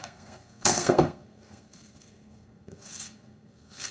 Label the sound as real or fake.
fake